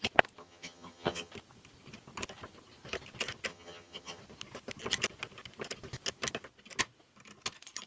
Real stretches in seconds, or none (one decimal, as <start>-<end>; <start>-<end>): 0.0-0.4; 1.3-3.5; 4.2-7.9